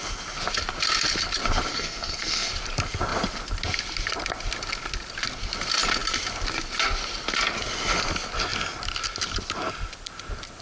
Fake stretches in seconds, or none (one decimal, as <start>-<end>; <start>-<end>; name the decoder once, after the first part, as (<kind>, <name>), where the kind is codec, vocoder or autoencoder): 1.7-2.5 (codec, SNAC)